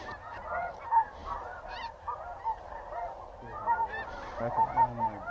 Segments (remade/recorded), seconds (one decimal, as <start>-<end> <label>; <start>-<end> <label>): 0.0-1.2 recorded; 1.2-3.1 remade; 3.1-3.8 recorded; 3.8-4.6 remade; 4.6-5.3 recorded